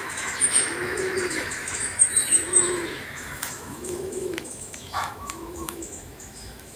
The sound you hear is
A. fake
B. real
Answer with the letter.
A